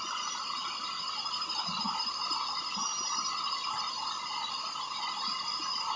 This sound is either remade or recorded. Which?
recorded